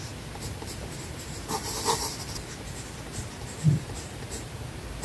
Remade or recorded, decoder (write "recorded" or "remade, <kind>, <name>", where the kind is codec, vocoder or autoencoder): remade, vocoder, BigVGAN v2